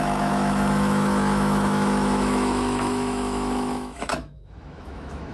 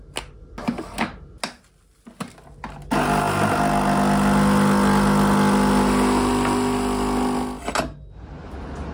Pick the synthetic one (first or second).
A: first